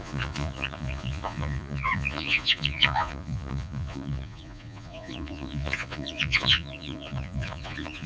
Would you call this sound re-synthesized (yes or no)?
yes